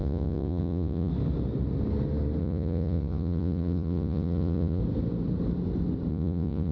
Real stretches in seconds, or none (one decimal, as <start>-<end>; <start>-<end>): 1.1-2.4; 4.8-6.1